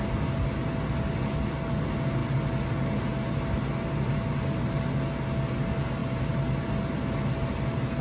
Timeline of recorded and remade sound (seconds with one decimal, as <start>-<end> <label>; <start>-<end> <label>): 0.0-8.0 recorded